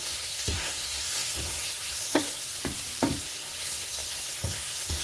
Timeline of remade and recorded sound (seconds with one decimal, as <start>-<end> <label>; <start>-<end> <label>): 0.0-2.5 remade; 2.5-3.2 recorded; 3.2-5.0 remade